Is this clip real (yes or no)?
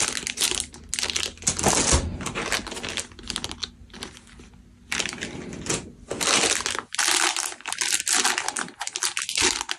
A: yes